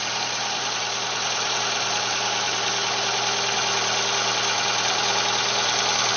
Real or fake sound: real